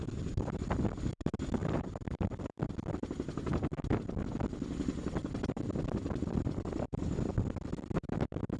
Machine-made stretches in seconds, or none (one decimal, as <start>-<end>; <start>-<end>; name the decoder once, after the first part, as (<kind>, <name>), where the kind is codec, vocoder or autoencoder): 1.6-3.1 (vocoder, BigVGAN v2); 5.2-7.0